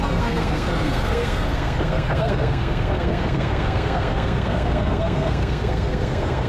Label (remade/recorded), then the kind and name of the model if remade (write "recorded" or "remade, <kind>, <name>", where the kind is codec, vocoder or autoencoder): remade, codec, SNAC